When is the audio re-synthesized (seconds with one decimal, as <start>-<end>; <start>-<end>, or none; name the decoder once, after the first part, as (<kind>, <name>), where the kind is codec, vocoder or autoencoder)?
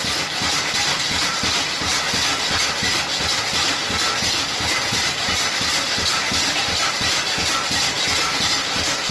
0.0-1.9 (vocoder, BigVGAN v2); 5.2-6.1; 8.6-9.1